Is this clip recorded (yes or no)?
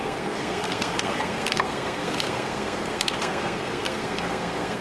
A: no